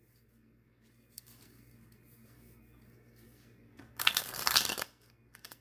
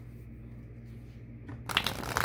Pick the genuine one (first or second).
second